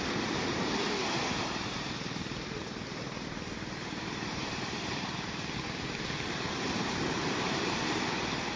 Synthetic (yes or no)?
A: yes